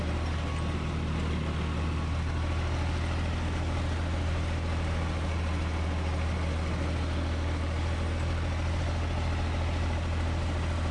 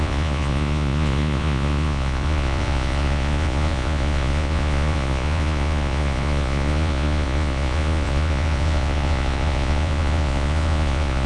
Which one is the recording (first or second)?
first